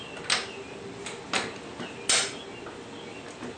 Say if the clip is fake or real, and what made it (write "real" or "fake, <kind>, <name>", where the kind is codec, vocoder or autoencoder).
real